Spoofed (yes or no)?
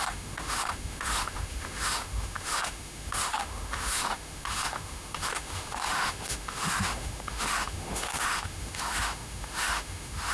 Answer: yes